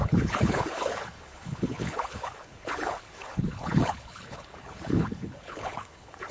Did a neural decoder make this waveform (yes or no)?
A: yes